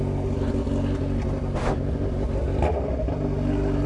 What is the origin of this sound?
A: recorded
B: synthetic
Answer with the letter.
A